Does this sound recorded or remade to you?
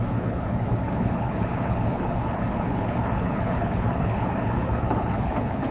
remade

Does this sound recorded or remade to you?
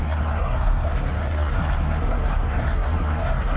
remade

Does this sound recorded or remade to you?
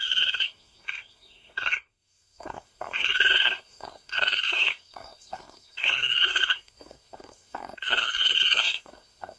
remade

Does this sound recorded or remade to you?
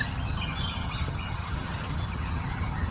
remade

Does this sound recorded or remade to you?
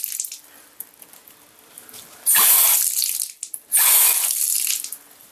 recorded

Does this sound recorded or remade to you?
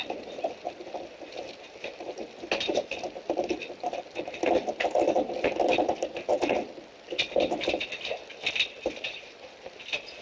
recorded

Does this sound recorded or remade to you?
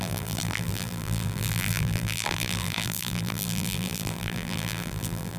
remade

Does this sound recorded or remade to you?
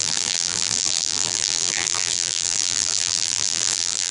remade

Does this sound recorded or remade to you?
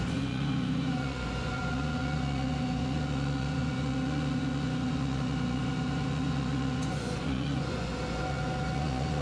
remade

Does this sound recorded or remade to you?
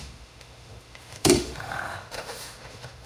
remade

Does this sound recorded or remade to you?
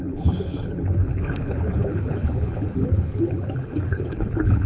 remade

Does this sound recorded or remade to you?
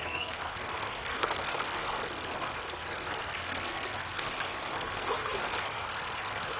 remade